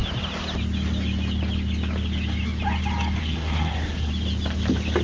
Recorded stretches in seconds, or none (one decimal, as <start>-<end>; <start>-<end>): 0.0-3.2; 4.1-5.0